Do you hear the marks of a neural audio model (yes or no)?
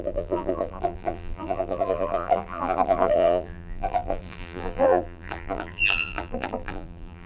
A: yes